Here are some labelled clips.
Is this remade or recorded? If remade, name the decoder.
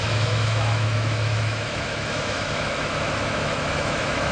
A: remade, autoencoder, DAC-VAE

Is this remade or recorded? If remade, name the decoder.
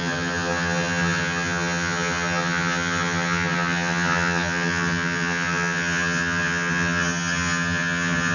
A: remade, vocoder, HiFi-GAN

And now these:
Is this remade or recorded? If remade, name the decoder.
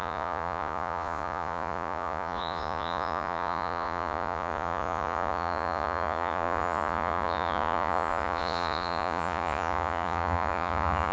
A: remade, vocoder, Vocos